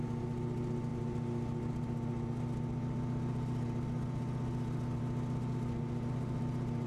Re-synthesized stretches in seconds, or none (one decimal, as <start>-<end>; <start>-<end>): none